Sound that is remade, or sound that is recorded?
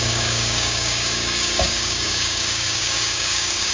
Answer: remade